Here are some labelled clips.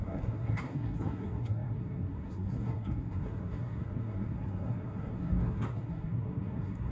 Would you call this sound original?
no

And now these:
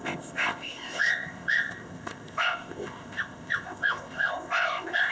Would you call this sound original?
no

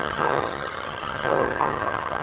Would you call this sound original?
no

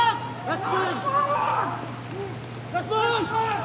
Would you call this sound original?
yes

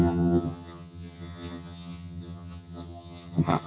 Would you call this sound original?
no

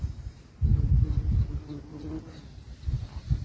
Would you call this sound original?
yes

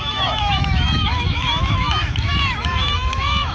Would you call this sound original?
no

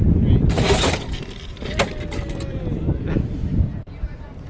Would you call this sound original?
yes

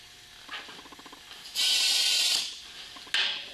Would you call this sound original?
yes